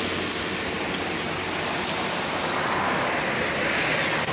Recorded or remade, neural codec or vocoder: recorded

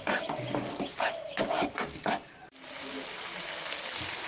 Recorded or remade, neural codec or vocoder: recorded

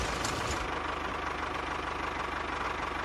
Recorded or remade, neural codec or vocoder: recorded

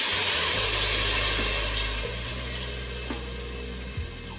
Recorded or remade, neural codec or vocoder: recorded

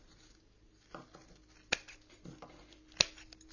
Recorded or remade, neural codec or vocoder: recorded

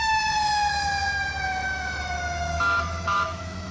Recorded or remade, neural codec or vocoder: remade, autoencoder, DAC-VAE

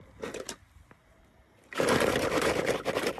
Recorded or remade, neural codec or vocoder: recorded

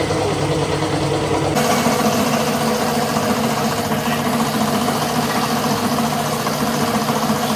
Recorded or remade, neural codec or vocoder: recorded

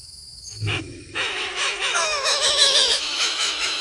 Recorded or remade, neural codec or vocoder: remade, autoencoder, DAC-VAE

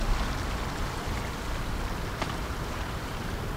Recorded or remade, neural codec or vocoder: recorded